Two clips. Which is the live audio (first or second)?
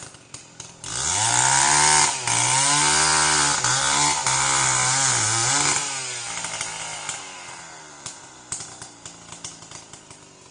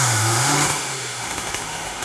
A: first